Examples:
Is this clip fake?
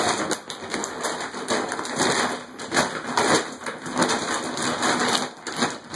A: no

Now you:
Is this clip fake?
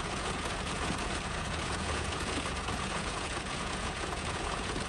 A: yes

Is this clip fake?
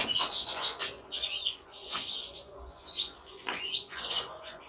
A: yes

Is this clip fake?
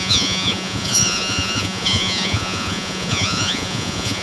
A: yes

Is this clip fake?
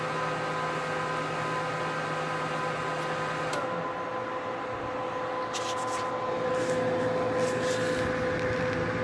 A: no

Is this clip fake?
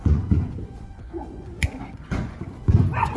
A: yes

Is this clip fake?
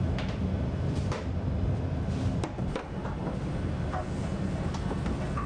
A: no